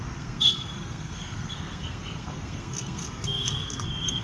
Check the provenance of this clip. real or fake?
fake